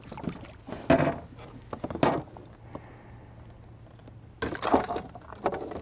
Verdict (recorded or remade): recorded